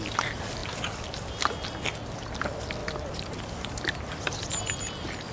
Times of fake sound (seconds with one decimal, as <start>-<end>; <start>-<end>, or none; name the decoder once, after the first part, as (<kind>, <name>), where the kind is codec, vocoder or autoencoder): 0.6-1.3 (vocoder, BigVGAN v2); 2.8-4.5